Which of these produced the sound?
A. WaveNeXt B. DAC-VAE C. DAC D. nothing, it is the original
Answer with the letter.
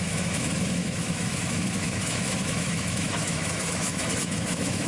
B